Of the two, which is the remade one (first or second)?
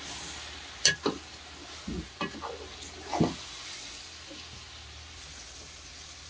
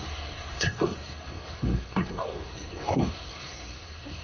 second